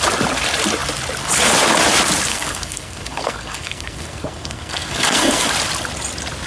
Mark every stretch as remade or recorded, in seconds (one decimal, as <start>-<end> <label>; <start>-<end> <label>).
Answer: 0.0-2.3 recorded; 2.3-5.5 remade; 5.5-6.5 recorded